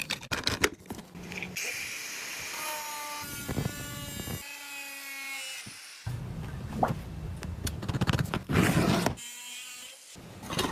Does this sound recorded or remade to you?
recorded